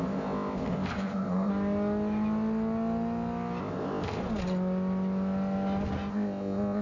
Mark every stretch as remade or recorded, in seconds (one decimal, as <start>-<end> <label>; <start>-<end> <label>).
0.0-1.5 remade; 1.5-3.6 recorded; 3.6-4.2 remade; 4.2-6.1 recorded; 6.1-6.8 remade